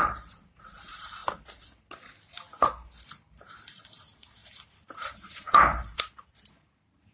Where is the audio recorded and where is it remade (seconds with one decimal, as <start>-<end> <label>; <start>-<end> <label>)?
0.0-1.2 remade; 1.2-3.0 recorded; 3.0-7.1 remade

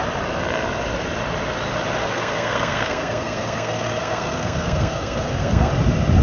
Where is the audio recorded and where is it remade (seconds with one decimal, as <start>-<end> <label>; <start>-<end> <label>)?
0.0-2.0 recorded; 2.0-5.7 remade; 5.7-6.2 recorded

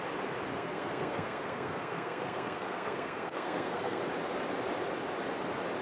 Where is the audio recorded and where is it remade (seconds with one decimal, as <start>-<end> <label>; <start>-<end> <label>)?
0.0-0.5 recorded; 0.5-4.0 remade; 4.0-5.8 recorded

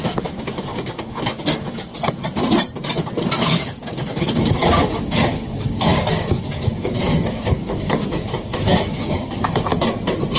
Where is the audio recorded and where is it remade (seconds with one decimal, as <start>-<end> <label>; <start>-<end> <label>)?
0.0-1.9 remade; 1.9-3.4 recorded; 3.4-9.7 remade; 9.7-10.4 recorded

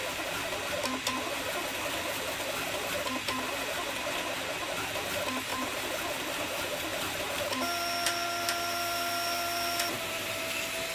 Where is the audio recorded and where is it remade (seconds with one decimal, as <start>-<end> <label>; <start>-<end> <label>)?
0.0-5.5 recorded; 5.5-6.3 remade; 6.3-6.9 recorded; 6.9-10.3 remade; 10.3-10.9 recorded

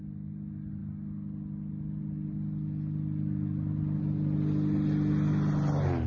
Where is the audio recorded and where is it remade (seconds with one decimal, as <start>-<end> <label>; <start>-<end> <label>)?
0.0-6.1 recorded

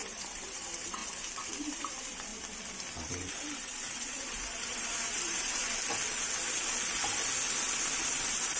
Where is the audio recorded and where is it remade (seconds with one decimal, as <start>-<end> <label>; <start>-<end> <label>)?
0.0-1.0 remade; 1.0-1.6 recorded; 1.6-2.3 remade; 2.3-3.1 recorded; 3.1-5.6 remade; 5.6-8.6 recorded